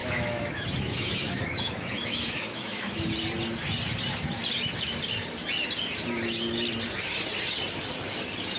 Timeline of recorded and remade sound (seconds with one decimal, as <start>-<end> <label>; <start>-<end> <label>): 0.0-3.2 remade; 3.2-8.6 recorded